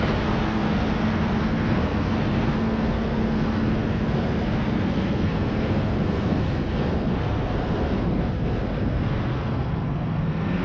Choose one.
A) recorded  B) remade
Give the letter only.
B